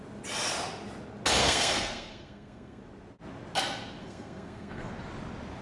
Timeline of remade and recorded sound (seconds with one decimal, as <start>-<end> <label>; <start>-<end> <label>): 0.0-1.4 recorded; 1.4-2.8 remade; 2.8-4.0 recorded; 4.0-4.9 remade; 4.9-5.6 recorded